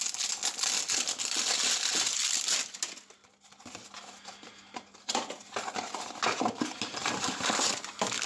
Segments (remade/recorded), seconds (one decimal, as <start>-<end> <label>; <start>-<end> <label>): 0.0-7.0 recorded; 7.0-7.8 remade; 7.8-8.3 recorded